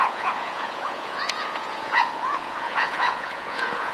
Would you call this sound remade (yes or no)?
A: yes